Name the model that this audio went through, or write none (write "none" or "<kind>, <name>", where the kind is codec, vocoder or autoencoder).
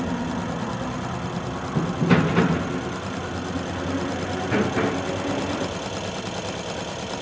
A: none